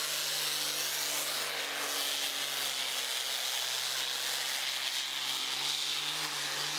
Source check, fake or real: real